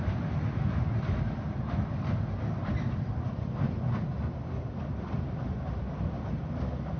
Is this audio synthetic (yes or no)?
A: no